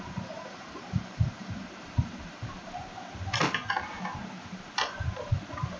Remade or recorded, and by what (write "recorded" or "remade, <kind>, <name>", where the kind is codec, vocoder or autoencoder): remade, vocoder, BigVGAN v2